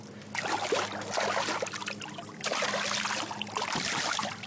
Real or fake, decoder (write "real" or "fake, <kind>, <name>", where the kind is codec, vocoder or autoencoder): real